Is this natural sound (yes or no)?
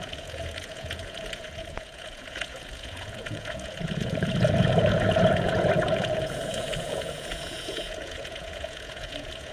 no